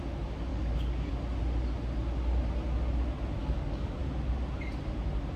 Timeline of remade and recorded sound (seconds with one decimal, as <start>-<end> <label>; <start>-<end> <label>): 0.0-0.5 recorded; 0.5-1.1 remade; 1.1-3.4 recorded; 3.4-4.0 remade; 4.0-5.4 recorded

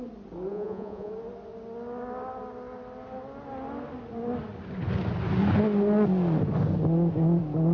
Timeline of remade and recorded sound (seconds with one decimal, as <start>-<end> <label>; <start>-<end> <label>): 0.0-0.5 recorded; 0.5-1.1 remade; 1.1-7.7 recorded

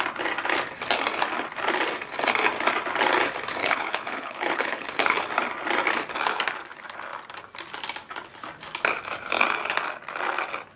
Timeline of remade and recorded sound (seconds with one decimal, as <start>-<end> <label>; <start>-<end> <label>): 0.0-3.6 recorded; 3.6-5.2 remade; 5.2-10.8 recorded